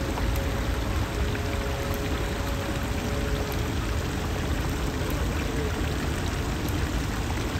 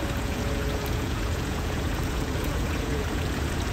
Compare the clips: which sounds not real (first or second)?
second